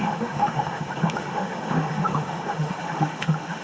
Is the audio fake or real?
fake